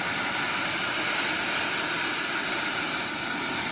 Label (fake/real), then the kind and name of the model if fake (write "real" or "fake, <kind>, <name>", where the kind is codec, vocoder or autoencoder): real